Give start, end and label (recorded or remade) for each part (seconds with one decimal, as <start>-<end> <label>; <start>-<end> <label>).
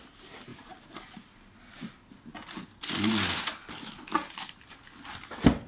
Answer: 0.0-5.7 recorded